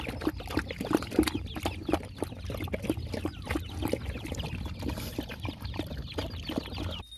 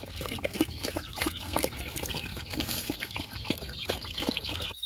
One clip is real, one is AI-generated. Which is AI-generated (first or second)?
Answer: second